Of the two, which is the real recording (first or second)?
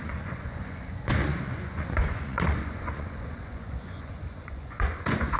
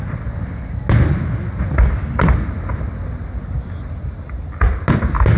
second